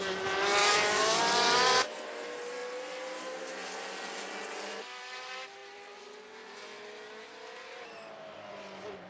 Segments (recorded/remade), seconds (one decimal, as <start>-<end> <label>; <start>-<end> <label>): 0.0-0.6 recorded; 0.6-1.2 remade; 1.2-9.1 recorded